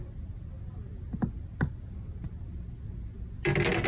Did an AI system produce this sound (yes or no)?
no